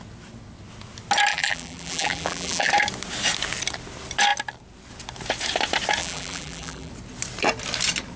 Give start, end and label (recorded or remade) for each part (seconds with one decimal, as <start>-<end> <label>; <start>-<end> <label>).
0.0-1.3 recorded; 1.3-2.7 remade; 2.7-6.0 recorded; 6.0-6.9 remade; 6.9-8.2 recorded